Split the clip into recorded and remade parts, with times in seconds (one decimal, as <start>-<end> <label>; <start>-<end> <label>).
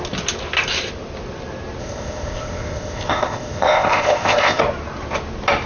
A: 0.0-1.8 recorded; 1.8-4.6 remade; 4.6-5.7 recorded